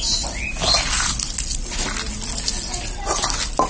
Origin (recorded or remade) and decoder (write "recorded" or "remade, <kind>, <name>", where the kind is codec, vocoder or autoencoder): recorded